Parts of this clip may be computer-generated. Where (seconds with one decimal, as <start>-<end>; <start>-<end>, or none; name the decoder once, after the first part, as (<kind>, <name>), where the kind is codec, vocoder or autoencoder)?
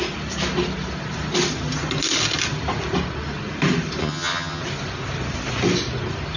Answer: 4.0-4.6 (vocoder, HiFi-GAN)